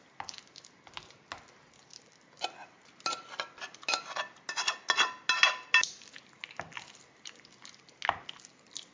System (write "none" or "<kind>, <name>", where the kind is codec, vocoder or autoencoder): none